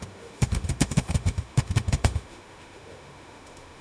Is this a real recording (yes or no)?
no